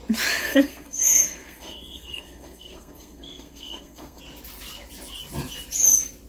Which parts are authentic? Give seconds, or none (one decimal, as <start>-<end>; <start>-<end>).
0.0-0.4; 4.2-6.3